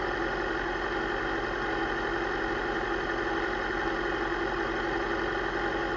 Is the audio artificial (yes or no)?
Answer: no